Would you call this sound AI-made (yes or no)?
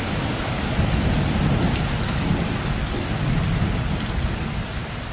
no